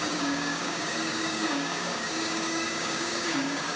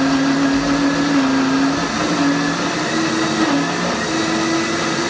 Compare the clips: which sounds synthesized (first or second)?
first